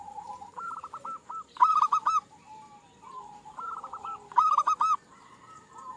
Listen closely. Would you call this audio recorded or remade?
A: recorded